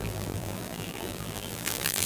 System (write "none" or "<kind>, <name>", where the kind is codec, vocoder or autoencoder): vocoder, BigVGAN v2